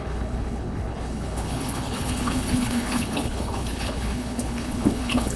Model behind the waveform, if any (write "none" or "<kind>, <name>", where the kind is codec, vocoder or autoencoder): codec, HILCodec